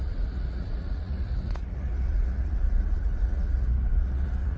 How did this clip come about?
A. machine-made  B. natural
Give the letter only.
A